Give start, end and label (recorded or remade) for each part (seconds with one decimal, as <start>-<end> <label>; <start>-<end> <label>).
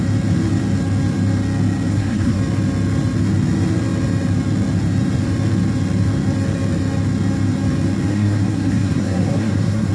0.0-1.9 recorded; 1.9-2.4 remade; 2.4-8.1 recorded; 8.1-9.9 remade